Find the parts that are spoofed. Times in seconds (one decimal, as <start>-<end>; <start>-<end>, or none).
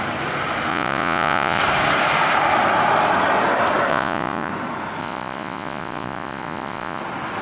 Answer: 0.7-1.6; 3.9-4.5; 5.0-7.0